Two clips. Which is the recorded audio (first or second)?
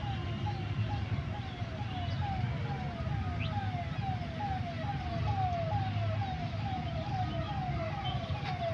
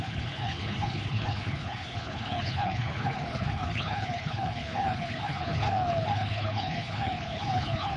first